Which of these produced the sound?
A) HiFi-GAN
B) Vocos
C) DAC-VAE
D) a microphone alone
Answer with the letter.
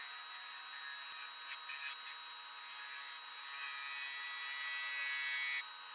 D